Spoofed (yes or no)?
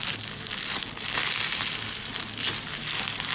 no